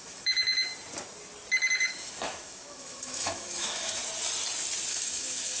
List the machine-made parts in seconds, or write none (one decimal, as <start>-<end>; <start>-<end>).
0.0-0.7; 1.7-4.0; 4.9-5.6